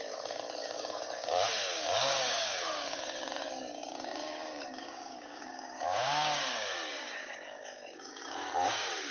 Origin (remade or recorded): remade